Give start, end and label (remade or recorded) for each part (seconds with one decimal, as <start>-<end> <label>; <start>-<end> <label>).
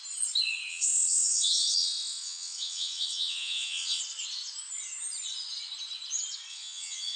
0.0-0.7 recorded; 0.7-4.0 remade; 4.0-6.5 recorded; 6.5-7.2 remade